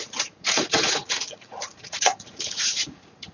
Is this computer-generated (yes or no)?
yes